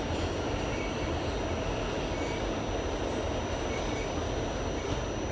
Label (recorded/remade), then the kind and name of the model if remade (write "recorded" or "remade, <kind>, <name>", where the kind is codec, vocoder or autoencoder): recorded